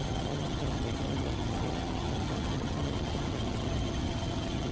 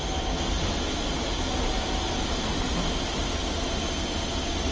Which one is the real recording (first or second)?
second